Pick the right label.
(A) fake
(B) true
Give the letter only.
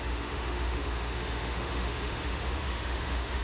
A